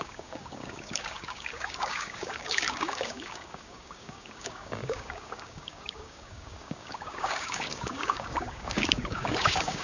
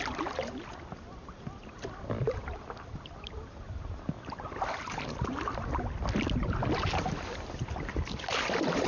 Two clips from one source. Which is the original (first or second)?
second